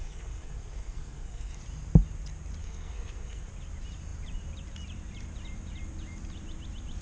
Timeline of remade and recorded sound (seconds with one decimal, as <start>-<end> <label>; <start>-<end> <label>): 0.0-1.6 remade; 1.6-2.6 recorded; 2.6-3.5 remade; 3.5-7.0 recorded